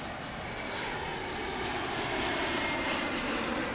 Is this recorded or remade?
recorded